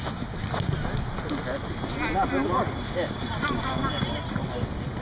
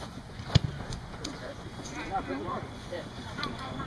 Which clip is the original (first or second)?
first